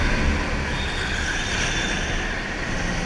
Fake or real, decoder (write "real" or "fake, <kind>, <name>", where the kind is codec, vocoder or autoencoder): real